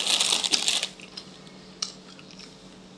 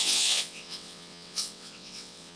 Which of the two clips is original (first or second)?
first